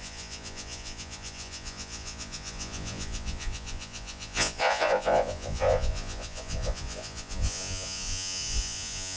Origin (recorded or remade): remade